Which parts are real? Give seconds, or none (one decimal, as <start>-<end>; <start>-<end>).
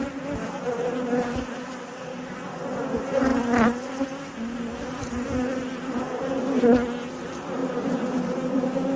0.0-9.0